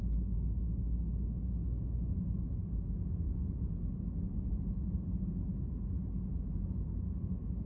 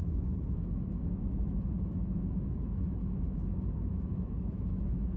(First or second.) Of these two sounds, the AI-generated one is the second